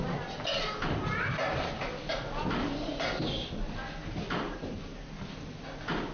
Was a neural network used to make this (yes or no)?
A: no